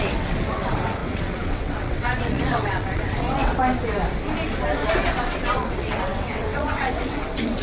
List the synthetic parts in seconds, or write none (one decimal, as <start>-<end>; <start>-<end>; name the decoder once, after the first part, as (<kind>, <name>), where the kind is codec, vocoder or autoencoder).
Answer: 0.0-3.6 (vocoder, WaveNeXt); 4.9-7.6